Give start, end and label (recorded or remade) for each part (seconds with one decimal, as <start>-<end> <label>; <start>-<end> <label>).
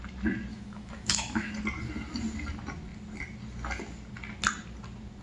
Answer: 0.0-0.5 recorded; 0.5-1.5 remade; 1.5-5.2 recorded